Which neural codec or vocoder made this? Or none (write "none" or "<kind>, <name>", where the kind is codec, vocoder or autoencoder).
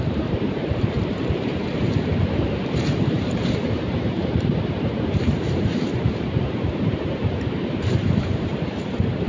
vocoder, BigVGAN v2